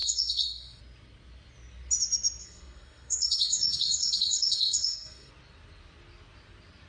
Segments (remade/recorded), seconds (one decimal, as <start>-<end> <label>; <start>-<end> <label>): 0.0-0.8 remade; 0.8-2.4 recorded; 2.4-5.3 remade; 5.3-6.9 recorded